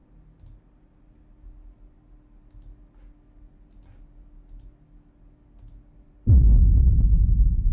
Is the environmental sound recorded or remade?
recorded